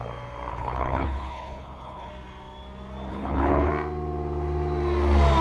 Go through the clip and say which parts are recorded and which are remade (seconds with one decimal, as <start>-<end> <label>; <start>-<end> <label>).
0.0-0.5 recorded; 0.5-2.1 remade; 2.1-3.1 recorded; 3.1-3.7 remade; 3.7-5.4 recorded